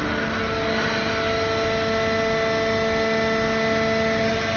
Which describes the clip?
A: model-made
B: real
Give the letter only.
B